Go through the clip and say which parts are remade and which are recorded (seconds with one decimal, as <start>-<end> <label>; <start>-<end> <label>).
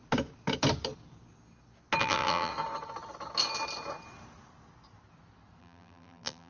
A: 0.0-2.0 recorded; 2.0-2.5 remade; 2.5-5.6 recorded; 5.6-6.5 remade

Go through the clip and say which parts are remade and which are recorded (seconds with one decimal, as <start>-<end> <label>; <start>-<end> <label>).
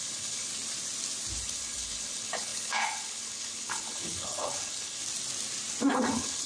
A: 0.0-0.5 remade; 0.5-1.4 recorded; 1.4-5.0 remade; 5.0-5.9 recorded; 5.9-6.5 remade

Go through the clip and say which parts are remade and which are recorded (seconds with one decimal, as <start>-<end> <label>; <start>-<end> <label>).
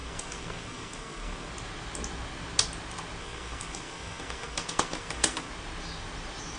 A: 0.0-1.5 remade; 1.5-3.2 recorded; 3.2-5.5 remade; 5.5-6.6 recorded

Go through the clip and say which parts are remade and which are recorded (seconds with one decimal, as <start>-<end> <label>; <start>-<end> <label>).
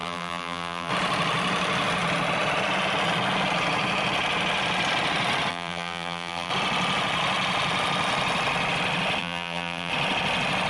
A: 0.0-0.9 remade; 0.9-5.5 recorded; 5.5-6.5 remade; 6.5-9.2 recorded; 9.2-9.9 remade; 9.9-10.7 recorded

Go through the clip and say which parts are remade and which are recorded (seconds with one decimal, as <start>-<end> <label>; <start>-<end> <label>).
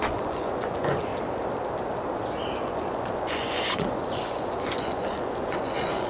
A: 0.0-1.1 remade; 1.1-2.6 recorded; 2.6-6.1 remade